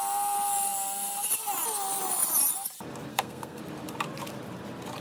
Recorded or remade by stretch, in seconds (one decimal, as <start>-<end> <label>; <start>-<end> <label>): 0.0-3.1 recorded; 3.1-3.6 remade; 3.6-5.0 recorded